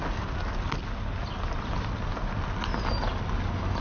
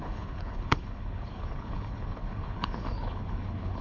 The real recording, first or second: first